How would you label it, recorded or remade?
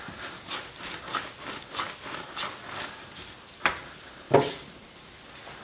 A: recorded